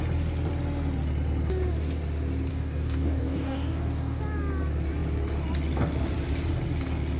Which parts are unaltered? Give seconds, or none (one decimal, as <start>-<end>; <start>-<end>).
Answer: 0.0-2.5; 4.2-7.2